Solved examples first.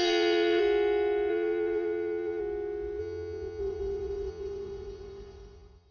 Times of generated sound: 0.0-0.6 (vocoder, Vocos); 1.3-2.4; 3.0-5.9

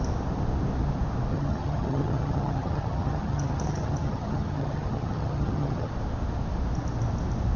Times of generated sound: 1.3-5.9 (vocoder, HiFi-GAN)

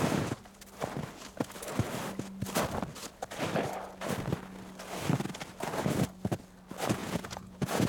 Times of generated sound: 7.0-7.9 (vocoder, Vocos)

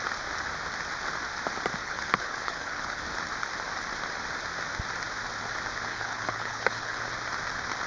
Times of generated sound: 1.8-3.0 (codec, HILCodec); 5.9-7.0

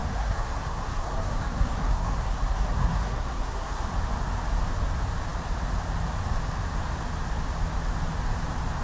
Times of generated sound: 0.0-3.9 (codec, SNAC)